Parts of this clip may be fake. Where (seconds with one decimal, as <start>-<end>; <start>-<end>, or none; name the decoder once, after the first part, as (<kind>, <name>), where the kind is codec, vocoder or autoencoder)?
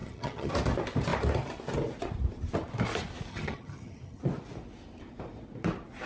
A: 0.0-0.5 (vocoder, HiFi-GAN); 3.3-4.2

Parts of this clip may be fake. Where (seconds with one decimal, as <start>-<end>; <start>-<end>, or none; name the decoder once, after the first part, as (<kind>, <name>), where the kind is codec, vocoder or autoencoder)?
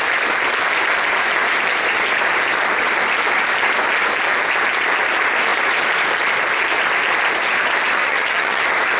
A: 8.0-8.6 (vocoder, HiFi-GAN)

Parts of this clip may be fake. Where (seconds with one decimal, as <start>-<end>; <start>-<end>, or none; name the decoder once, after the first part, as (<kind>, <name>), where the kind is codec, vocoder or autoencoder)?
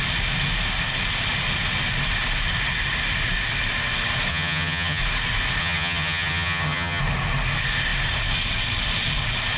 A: 4.3-5.0 (vocoder, HiFi-GAN); 5.6-7.0